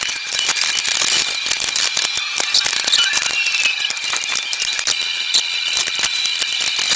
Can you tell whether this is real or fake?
real